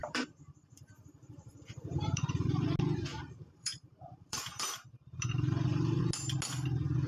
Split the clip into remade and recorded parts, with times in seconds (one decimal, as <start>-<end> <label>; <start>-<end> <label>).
0.0-2.6 remade; 2.6-3.1 recorded; 3.1-6.0 remade; 6.0-7.1 recorded

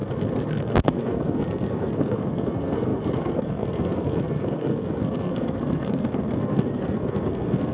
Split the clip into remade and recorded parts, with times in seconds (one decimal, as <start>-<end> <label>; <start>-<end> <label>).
0.0-0.6 recorded; 0.6-7.7 remade

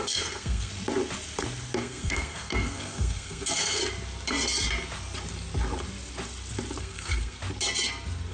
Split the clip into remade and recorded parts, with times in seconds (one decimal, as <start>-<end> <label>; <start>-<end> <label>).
0.0-0.7 remade; 0.7-1.8 recorded; 1.8-3.8 remade; 3.8-6.8 recorded; 6.8-7.4 remade; 7.4-8.3 recorded

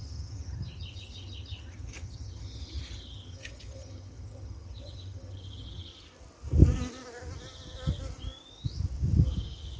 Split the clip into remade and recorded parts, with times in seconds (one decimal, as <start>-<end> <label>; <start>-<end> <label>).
0.0-5.9 remade; 5.9-9.8 recorded

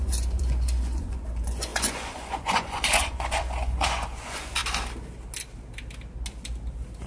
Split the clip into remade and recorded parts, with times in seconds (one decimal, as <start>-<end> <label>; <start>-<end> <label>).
0.0-4.6 remade; 4.6-7.1 recorded

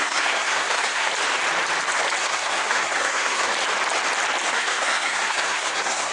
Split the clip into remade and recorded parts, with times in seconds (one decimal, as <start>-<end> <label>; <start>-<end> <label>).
0.0-1.1 remade; 1.1-2.2 recorded; 2.2-3.5 remade; 3.5-4.5 recorded; 4.5-6.1 remade